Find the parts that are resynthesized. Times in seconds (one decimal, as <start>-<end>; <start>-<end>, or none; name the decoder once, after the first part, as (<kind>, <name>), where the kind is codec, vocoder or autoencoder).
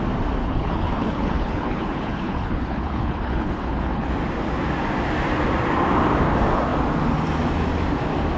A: 0.4-4.1 (codec, HILCodec)